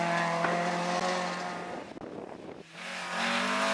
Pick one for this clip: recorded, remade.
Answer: recorded